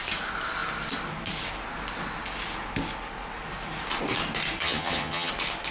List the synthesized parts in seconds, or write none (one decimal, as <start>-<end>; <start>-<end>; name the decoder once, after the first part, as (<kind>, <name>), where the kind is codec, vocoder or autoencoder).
4.6-5.3 (vocoder, HiFi-GAN)